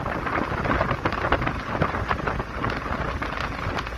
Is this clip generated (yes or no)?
no